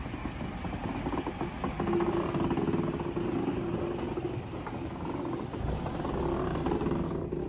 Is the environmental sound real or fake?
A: real